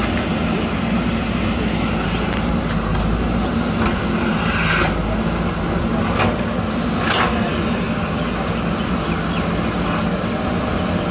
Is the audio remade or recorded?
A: recorded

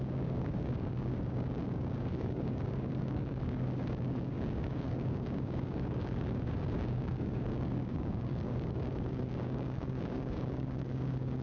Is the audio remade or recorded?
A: remade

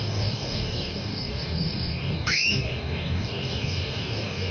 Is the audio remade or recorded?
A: remade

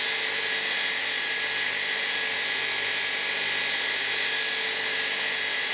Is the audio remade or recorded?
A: recorded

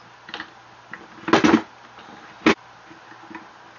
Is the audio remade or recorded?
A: recorded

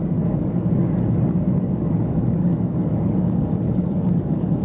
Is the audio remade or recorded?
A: remade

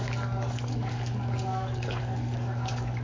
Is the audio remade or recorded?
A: remade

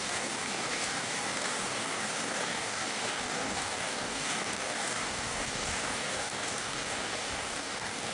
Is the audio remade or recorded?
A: remade